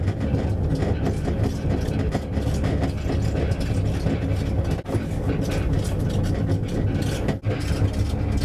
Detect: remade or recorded recorded